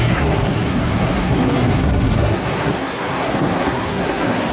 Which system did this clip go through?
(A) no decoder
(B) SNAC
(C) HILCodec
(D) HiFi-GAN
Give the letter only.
B